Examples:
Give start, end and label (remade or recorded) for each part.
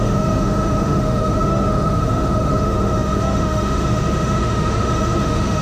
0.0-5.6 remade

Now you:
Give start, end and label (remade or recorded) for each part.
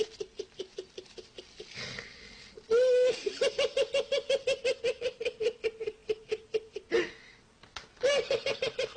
0.0-9.0 recorded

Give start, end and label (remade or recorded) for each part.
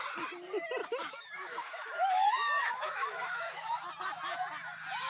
0.0-0.8 recorded; 0.8-3.9 remade; 3.9-5.1 recorded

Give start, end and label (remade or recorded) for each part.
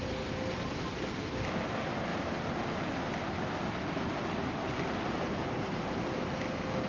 0.0-6.9 recorded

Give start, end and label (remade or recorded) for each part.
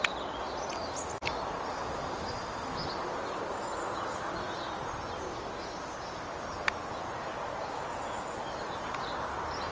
0.0-9.7 recorded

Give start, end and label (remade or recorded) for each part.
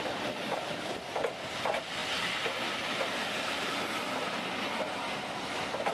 0.0-5.9 recorded